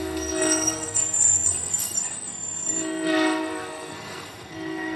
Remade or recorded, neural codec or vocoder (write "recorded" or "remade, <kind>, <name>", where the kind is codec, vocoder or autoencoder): remade, codec, SNAC